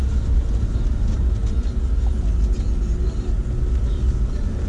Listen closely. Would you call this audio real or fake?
real